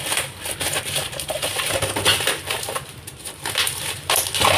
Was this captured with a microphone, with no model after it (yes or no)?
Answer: yes